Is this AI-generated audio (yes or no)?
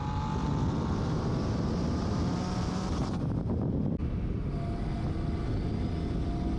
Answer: no